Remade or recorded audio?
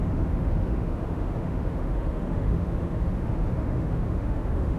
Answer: remade